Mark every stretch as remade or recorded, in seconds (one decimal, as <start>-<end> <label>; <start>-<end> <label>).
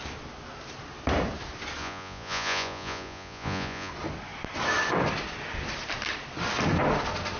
0.0-1.8 recorded; 1.8-3.9 remade; 3.9-7.4 recorded